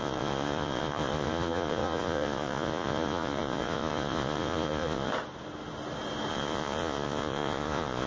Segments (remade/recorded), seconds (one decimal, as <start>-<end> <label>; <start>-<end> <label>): 0.0-5.1 remade; 5.1-6.3 recorded; 6.3-8.1 remade